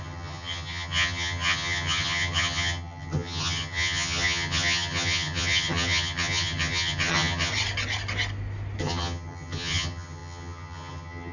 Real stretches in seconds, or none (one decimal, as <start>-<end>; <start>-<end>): 7.5-8.8